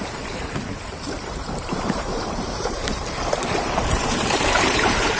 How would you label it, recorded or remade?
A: remade